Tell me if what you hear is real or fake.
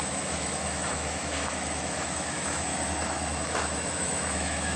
fake